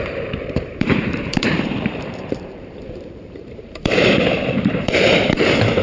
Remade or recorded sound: remade